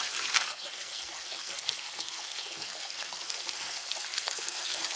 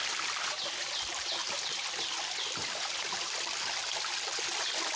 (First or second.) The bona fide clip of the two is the second